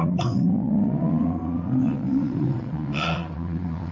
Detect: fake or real fake